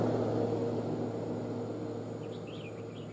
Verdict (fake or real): real